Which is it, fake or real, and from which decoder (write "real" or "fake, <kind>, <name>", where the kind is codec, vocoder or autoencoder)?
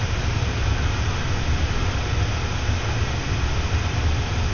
real